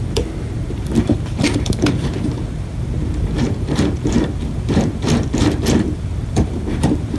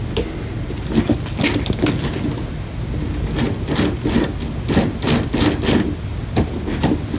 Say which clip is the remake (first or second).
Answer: first